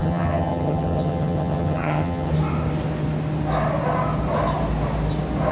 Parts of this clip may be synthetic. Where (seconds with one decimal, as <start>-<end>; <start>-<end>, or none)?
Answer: 0.0-2.3